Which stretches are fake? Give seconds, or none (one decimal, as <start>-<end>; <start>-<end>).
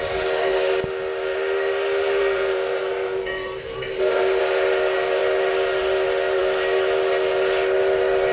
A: 2.2-4.4